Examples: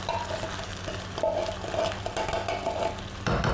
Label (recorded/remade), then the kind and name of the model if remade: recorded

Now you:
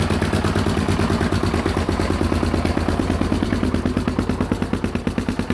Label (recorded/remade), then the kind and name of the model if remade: recorded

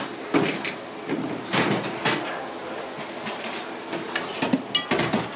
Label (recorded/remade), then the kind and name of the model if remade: recorded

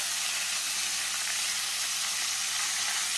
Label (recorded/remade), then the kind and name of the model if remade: recorded